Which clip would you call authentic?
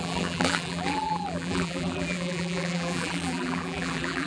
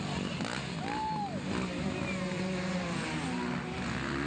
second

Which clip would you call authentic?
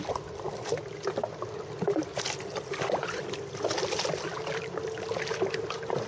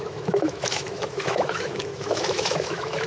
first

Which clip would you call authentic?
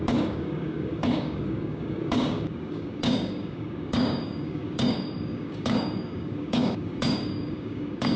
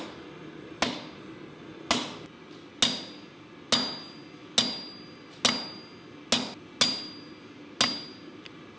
second